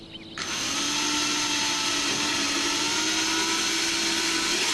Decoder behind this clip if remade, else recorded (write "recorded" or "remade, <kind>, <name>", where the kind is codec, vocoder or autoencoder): recorded